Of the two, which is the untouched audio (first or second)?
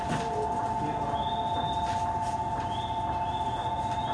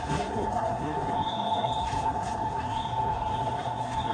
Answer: first